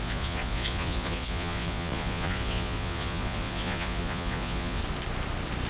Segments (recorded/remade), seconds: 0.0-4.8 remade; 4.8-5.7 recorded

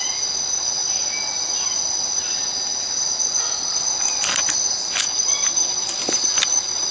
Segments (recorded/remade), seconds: 0.0-6.9 recorded

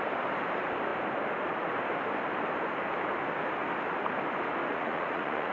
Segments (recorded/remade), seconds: 0.0-4.7 recorded; 4.7-5.5 remade

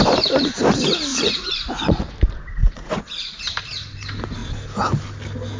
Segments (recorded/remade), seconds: 0.0-1.1 recorded; 1.1-2.0 remade; 2.0-2.6 recorded; 2.6-3.4 remade; 3.4-5.6 recorded